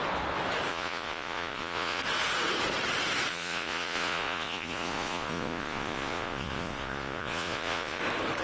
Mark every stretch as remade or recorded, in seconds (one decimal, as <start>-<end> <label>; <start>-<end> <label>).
0.0-0.7 recorded; 0.7-2.0 remade; 2.0-3.3 recorded; 3.3-8.0 remade; 8.0-8.4 recorded